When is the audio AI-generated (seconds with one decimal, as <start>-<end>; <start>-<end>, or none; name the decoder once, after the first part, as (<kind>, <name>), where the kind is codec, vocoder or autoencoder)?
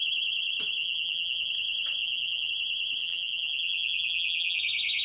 0.8-1.5 (vocoder, BigVGAN v2); 2.0-2.5; 3.0-4.6